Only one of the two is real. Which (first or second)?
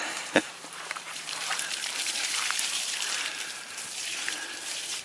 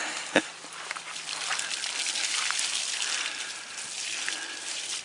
second